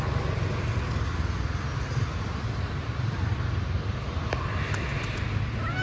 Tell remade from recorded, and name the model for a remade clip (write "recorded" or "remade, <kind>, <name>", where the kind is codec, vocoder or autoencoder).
recorded